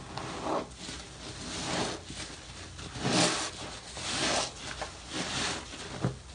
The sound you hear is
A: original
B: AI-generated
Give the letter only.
A